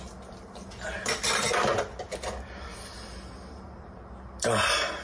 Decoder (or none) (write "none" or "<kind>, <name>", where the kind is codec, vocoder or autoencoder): none